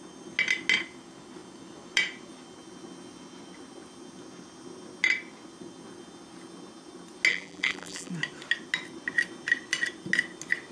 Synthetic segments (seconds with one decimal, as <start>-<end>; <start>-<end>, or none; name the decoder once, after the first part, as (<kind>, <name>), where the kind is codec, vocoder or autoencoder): 7.3-8.1 (vocoder, BigVGAN v2)